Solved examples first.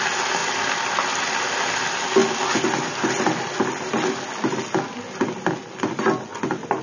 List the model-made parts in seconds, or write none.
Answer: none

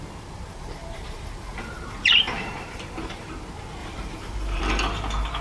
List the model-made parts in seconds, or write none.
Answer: 0.8-3.3 (vocoder, BigVGAN v2); 3.8-4.6

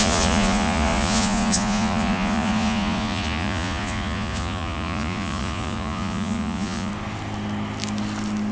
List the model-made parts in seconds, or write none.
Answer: 0.0-6.9 (vocoder, Vocos)

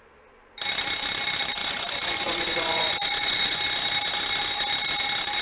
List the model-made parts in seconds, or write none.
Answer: 1.6-3.6 (vocoder, Vocos)

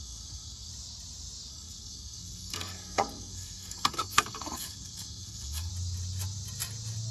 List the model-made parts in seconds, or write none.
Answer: 0.0-0.7 (codec, SNAC); 1.5-5.7

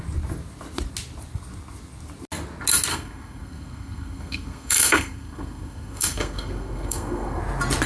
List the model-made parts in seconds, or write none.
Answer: 2.9-7.4 (codec, SNAC)

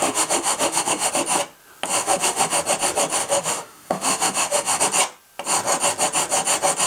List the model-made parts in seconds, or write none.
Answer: 0.0-1.1 (autoencoder, DAC-VAE); 2.0-2.6; 3.2-4.8